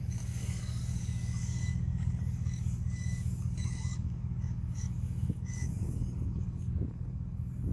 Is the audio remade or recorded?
remade